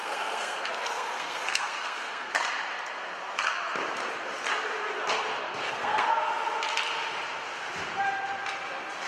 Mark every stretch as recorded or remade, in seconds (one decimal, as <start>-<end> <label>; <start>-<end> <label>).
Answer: 0.0-2.3 remade; 2.3-5.6 recorded; 5.6-6.1 remade; 6.1-9.1 recorded